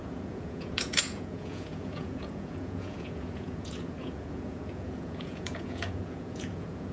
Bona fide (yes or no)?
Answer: no